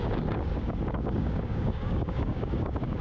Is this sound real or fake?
fake